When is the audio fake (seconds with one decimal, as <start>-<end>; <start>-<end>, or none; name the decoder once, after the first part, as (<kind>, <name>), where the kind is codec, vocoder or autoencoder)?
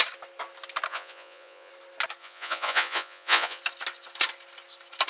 0.9-1.7 (vocoder, Vocos); 2.2-3.6